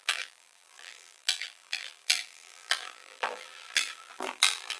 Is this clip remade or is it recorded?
remade